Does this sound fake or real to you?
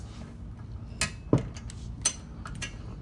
real